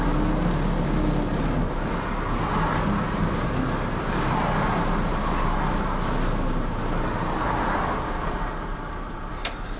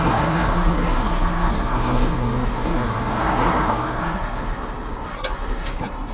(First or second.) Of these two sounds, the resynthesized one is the second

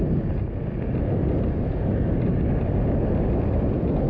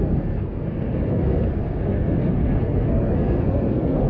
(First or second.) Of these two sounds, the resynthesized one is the second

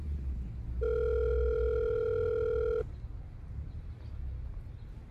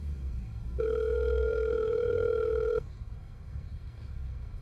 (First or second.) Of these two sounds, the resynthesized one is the second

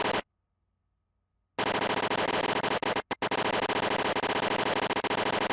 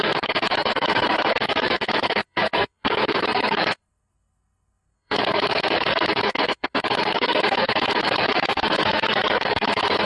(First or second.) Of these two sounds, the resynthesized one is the second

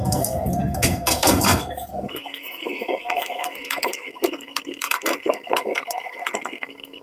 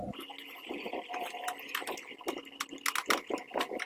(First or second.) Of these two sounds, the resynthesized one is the first